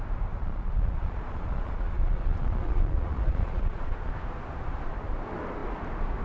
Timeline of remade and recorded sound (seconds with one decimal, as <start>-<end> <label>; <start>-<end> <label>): 0.0-0.4 recorded; 0.4-4.1 remade; 4.1-6.2 recorded